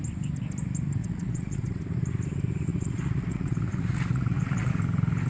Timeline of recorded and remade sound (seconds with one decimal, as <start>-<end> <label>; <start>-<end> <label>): 0.0-1.0 recorded; 1.0-1.8 remade; 1.8-2.7 recorded; 2.7-4.7 remade; 4.7-5.3 recorded